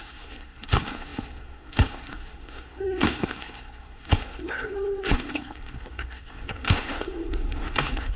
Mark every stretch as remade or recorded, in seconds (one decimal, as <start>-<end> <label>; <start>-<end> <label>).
0.0-8.2 remade

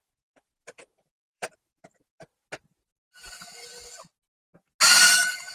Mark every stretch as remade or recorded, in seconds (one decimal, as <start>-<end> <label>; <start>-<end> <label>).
0.0-1.3 recorded; 1.3-2.0 remade; 2.0-5.5 recorded

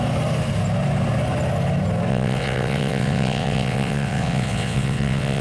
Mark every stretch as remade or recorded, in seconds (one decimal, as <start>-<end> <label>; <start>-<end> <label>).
0.0-2.1 recorded; 2.1-5.4 remade

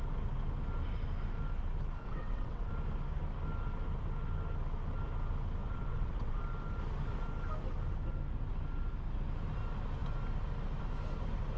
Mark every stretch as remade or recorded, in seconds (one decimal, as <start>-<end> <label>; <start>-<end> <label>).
0.0-2.0 recorded; 2.0-2.7 remade; 2.7-5.6 recorded; 5.6-6.4 remade; 6.4-11.6 recorded

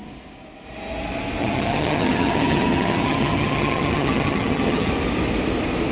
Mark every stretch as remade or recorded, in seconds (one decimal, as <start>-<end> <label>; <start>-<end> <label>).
0.0-1.4 recorded; 1.4-4.9 remade; 4.9-5.9 recorded

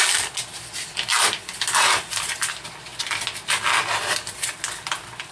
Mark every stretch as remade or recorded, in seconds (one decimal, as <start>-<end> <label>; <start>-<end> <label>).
0.0-5.3 recorded

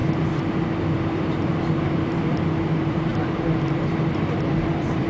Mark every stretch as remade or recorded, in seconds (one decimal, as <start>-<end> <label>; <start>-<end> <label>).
0.0-1.6 recorded; 1.6-3.1 remade; 3.1-3.7 recorded; 3.7-5.1 remade

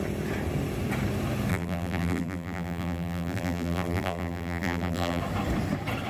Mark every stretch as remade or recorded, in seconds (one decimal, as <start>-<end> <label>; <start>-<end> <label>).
0.0-1.5 recorded; 1.5-5.2 remade; 5.2-6.1 recorded